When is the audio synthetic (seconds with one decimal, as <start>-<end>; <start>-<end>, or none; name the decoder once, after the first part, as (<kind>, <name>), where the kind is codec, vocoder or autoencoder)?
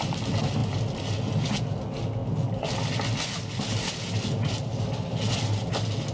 none